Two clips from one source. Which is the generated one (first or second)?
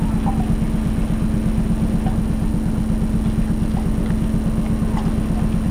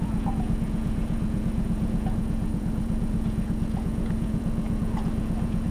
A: second